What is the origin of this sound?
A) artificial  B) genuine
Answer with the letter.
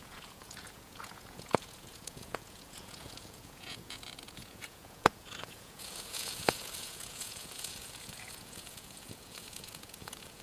A